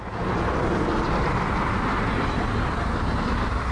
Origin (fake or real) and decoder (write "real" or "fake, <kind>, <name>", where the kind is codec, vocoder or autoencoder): real